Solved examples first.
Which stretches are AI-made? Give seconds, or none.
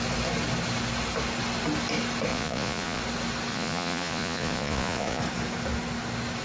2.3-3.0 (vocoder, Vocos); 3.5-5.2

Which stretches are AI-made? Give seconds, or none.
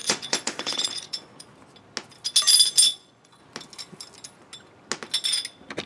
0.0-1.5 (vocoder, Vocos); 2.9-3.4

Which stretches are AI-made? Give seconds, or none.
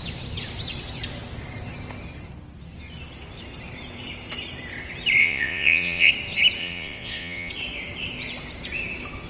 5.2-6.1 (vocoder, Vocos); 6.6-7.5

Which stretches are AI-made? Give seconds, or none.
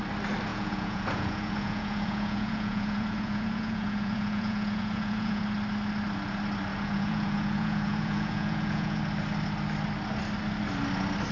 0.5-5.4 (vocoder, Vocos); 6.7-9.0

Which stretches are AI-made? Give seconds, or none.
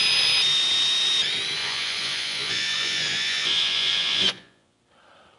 1.6-4.8 (vocoder, Vocos)